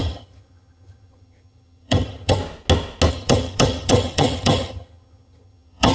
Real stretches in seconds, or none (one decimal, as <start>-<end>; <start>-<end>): 2.4-3.1